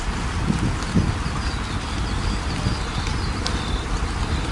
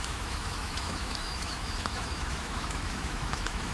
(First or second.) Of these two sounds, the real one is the first